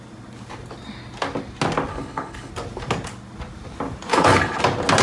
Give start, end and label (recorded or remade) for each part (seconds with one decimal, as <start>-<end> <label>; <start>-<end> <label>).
0.0-1.9 recorded; 1.9-2.5 remade; 2.5-4.1 recorded; 4.1-4.6 remade; 4.6-5.0 recorded